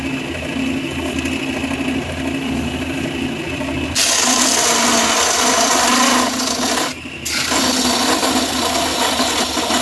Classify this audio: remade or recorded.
recorded